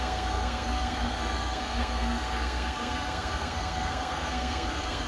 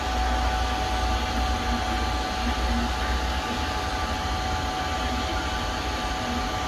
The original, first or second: second